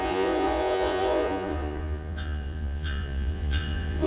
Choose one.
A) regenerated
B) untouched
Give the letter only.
A